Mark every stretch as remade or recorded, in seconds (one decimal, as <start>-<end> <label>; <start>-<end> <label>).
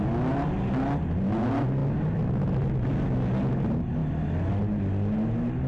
0.0-5.7 recorded